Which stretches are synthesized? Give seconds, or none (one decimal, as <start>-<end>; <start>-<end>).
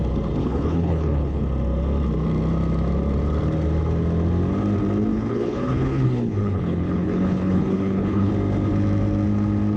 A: 0.4-1.4; 5.1-8.3